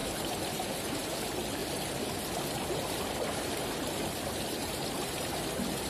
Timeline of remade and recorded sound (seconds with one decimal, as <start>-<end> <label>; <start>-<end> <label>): 0.0-0.7 remade; 0.7-4.6 recorded; 4.6-5.3 remade; 5.3-5.9 recorded